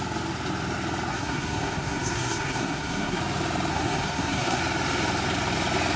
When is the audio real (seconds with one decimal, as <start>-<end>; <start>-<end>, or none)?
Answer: 0.0-1.1; 3.2-3.7; 4.6-6.0